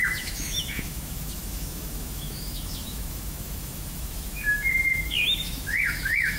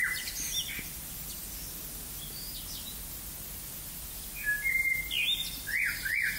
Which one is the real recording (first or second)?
second